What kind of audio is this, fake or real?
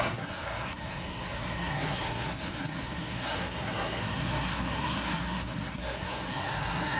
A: fake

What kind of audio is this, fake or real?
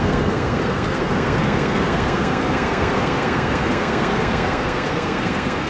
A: fake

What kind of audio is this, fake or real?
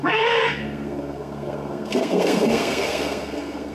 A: fake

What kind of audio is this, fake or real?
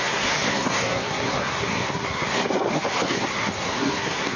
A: fake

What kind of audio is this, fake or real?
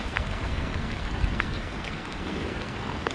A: fake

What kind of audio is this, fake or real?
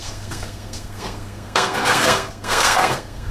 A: fake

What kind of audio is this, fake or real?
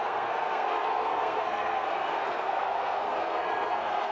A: fake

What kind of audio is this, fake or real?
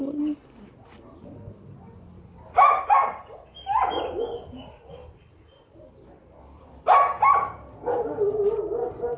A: real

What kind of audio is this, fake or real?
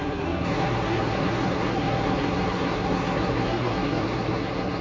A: fake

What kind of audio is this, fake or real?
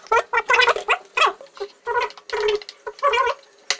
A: real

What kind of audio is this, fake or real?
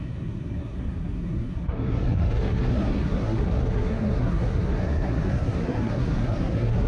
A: fake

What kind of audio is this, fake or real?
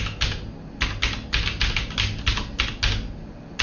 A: real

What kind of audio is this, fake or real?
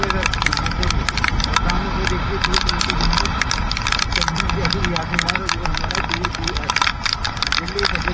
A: real